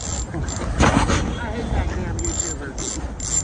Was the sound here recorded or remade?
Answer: recorded